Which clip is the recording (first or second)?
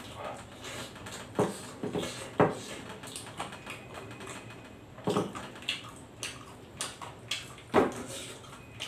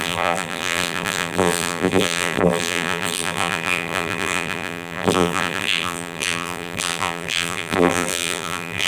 first